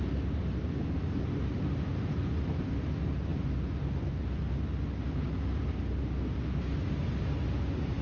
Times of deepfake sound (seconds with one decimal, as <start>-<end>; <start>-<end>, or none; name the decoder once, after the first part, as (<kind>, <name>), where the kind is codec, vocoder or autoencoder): none